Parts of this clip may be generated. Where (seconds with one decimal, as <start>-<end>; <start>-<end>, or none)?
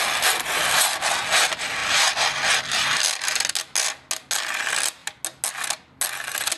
none